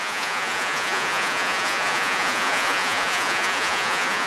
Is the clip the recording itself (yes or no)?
no